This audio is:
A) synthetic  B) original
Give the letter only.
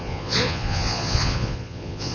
A